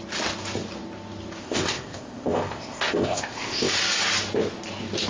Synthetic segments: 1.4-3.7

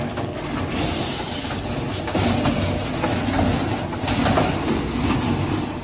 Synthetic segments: none

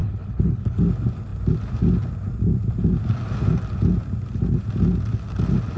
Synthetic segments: 0.0-0.8

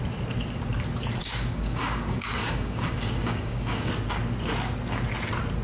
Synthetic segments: 1.2-3.9

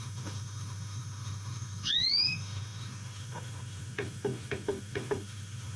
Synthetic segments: 0.0-5.8

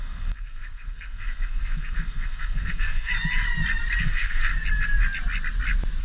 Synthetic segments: 0.0-3.1; 4.0-4.5

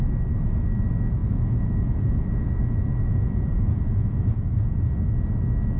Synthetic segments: 1.2-4.7

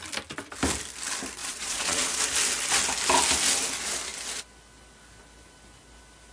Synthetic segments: 1.4-2.2